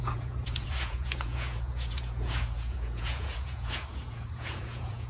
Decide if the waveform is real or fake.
fake